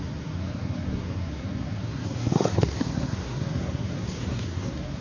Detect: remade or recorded remade